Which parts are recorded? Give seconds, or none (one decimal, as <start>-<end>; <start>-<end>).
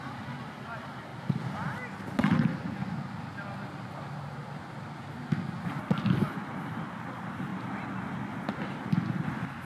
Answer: 0.0-9.6